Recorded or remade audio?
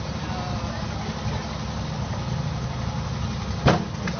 recorded